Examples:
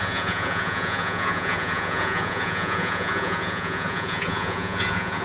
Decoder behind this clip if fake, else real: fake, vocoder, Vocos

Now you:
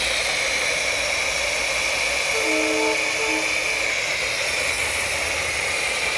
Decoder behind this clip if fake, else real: real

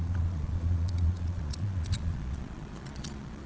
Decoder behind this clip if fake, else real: fake, vocoder, Vocos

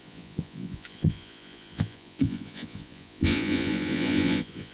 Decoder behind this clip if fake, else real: fake, vocoder, Vocos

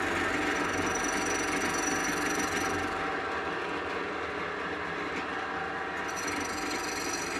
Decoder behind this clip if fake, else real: real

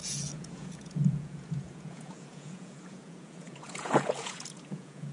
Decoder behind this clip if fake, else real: fake, vocoder, Vocos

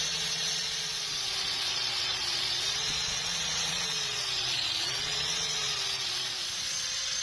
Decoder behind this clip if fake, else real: fake, vocoder, Vocos